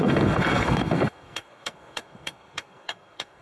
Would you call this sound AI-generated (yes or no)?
yes